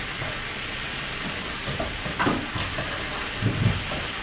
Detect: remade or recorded remade